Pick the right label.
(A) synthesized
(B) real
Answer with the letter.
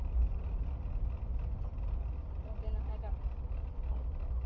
B